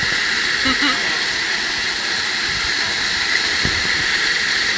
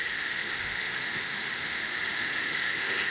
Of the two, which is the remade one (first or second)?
second